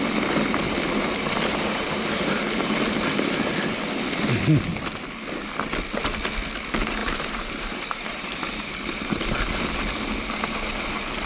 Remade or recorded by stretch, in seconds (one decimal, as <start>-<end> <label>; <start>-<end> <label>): 0.0-1.5 recorded; 1.5-3.5 remade; 3.5-7.0 recorded; 7.0-9.3 remade; 9.3-11.3 recorded